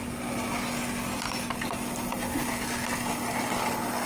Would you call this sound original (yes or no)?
yes